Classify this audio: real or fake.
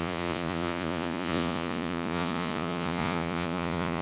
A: fake